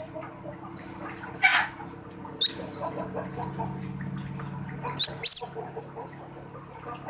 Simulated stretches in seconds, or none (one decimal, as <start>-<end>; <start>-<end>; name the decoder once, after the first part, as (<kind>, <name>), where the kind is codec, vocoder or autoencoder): none